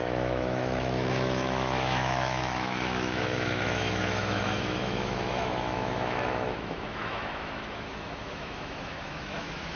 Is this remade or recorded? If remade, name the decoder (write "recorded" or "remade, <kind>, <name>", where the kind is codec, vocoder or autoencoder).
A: remade, autoencoder, DAC-VAE